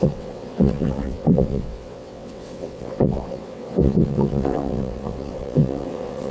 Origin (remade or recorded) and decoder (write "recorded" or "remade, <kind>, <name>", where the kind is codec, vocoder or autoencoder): remade, vocoder, WaveNeXt